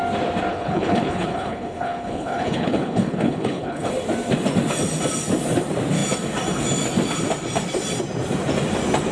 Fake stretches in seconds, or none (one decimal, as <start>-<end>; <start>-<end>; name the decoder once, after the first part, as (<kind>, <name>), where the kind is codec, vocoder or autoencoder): 0.5-3.9 (codec, HILCodec)